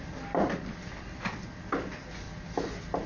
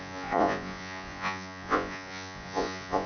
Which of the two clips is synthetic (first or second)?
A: second